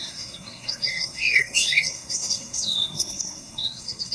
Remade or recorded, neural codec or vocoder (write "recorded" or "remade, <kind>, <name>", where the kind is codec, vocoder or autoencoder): remade, codec, SNAC